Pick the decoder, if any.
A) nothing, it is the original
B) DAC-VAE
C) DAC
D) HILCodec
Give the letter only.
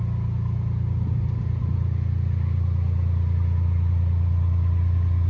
A